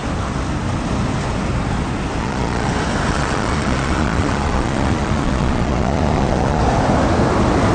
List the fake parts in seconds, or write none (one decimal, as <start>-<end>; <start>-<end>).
2.2-2.7; 3.1-6.6